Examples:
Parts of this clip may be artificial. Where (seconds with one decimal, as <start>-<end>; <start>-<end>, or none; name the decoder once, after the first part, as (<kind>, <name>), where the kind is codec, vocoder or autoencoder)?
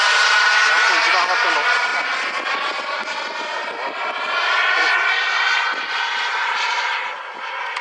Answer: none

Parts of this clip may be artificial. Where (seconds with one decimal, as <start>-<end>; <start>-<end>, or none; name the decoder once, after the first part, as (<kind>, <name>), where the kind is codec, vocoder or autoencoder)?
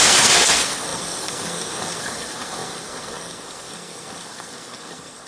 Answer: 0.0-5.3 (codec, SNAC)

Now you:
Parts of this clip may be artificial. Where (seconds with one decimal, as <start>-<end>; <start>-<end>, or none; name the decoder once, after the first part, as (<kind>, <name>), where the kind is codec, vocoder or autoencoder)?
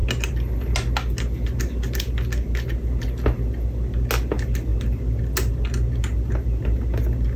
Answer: none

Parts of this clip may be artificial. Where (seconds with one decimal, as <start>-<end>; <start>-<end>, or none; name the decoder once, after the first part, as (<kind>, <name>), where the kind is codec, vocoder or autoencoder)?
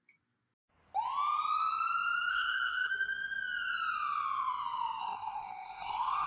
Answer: 2.3-2.9 (codec, SNAC); 5.0-6.3